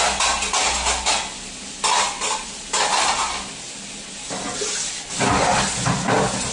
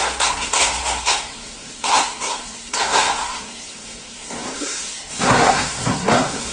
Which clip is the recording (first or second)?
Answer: first